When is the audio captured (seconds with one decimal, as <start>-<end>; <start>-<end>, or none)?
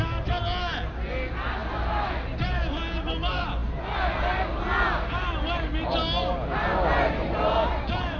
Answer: 0.0-8.2